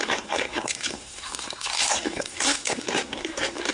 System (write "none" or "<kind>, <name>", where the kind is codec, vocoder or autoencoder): codec, SNAC